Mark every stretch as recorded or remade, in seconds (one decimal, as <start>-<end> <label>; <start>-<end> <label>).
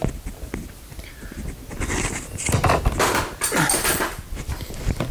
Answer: 0.0-5.1 recorded